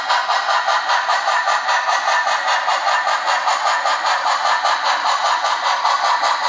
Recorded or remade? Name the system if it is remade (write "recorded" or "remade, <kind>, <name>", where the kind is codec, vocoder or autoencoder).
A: remade, vocoder, BigVGAN v2